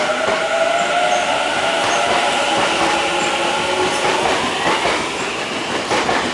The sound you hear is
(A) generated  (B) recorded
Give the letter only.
B